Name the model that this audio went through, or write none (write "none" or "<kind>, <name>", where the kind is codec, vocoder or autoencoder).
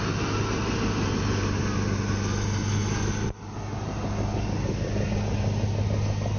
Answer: none